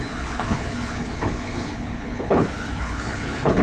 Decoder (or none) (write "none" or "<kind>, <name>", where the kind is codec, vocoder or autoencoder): codec, HILCodec